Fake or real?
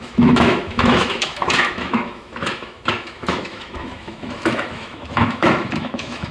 fake